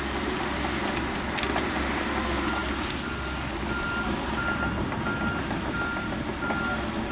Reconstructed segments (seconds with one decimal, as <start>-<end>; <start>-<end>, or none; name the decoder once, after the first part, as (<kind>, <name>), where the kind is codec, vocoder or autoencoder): none